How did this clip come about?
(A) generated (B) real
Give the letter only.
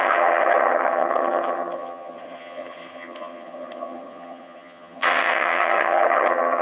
A